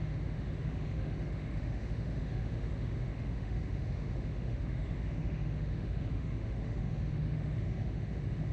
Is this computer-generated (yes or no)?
yes